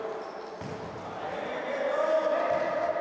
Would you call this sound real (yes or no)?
yes